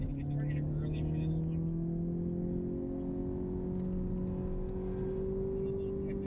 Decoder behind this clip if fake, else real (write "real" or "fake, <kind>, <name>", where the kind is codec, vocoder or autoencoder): real